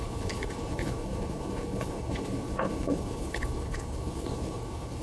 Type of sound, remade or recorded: remade